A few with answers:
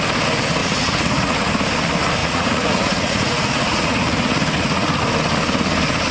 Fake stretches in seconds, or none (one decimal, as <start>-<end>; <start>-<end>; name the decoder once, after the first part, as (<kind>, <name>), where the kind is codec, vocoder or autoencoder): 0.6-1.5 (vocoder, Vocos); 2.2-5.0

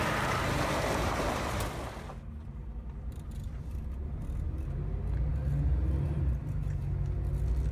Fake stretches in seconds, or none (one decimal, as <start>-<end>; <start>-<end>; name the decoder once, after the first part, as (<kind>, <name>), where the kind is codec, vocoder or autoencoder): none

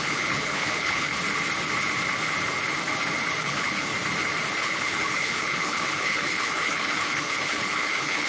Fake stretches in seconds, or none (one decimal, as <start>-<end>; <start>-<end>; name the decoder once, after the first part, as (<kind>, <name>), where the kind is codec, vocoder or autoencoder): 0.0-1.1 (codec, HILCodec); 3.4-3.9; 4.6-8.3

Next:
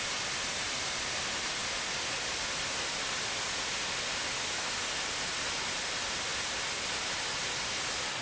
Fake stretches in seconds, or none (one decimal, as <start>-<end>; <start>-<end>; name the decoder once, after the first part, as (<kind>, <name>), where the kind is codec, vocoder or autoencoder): none

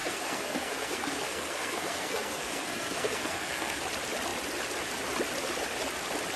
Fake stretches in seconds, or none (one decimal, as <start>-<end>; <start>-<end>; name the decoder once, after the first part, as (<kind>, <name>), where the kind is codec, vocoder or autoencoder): 0.0-3.8 (codec, SNAC)

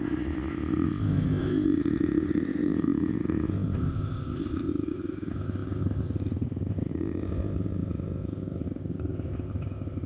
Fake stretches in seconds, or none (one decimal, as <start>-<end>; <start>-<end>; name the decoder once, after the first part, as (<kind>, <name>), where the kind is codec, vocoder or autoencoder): 0.0-10.1 (codec, ZipCodec)

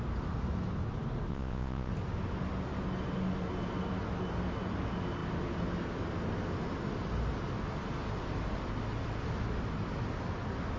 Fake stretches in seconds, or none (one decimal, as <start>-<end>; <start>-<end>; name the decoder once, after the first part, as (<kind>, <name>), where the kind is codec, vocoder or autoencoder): 1.3-1.9 (vocoder, Vocos)

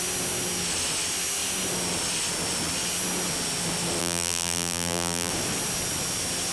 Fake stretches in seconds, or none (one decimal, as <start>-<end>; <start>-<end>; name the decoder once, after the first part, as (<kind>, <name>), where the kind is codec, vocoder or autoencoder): 4.0-5.3 (vocoder, BigVGAN v2)